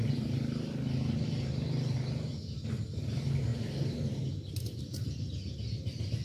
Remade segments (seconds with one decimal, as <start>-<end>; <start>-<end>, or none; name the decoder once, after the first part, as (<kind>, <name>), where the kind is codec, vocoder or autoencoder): none